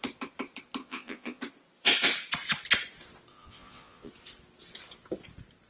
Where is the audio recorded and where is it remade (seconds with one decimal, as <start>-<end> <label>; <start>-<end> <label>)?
0.0-0.8 recorded; 0.8-1.4 remade; 1.4-3.3 recorded; 3.3-4.1 remade; 4.1-5.7 recorded